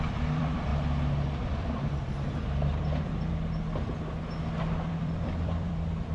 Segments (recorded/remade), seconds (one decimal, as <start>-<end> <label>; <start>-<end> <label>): 0.0-0.7 remade; 0.7-1.4 recorded; 1.4-3.3 remade; 3.3-4.9 recorded; 4.9-6.1 remade